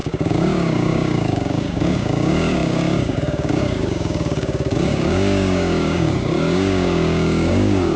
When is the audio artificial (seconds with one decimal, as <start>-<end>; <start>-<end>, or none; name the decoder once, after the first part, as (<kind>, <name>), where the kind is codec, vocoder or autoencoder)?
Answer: 0.0-8.0 (codec, DAC)